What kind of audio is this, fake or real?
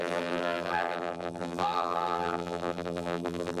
fake